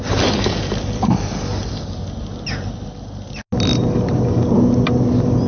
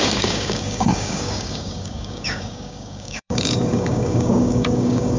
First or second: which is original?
first